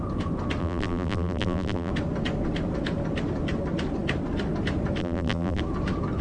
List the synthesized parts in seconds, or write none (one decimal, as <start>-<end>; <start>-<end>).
0.6-1.9; 5.0-5.6